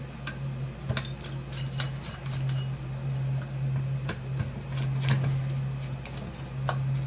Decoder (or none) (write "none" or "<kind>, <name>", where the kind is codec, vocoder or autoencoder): none